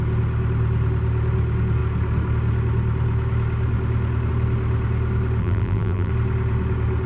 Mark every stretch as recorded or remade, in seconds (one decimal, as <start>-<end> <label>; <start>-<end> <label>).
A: 0.0-5.4 recorded; 5.4-6.1 remade; 6.1-7.1 recorded